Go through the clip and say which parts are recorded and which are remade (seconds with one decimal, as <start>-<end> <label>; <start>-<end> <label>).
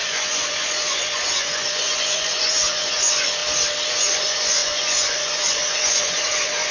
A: 0.0-3.4 remade; 3.4-3.9 recorded; 3.9-6.7 remade